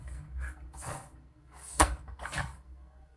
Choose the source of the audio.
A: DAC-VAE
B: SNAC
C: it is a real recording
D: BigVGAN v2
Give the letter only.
B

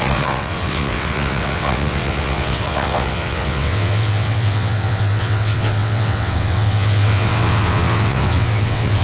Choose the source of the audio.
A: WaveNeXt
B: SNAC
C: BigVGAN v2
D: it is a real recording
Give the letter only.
A